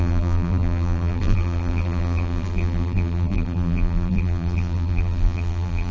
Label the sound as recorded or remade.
remade